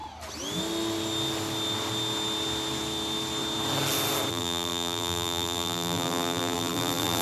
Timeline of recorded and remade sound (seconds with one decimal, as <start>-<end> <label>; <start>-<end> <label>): 0.0-4.3 recorded; 4.3-7.2 remade